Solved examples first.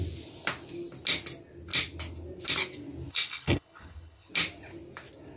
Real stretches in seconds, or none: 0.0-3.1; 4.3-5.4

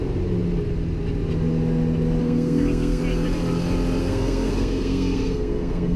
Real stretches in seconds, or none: 0.0-2.2; 3.0-4.0